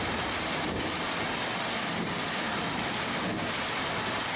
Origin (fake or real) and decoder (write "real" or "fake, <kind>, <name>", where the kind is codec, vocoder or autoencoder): real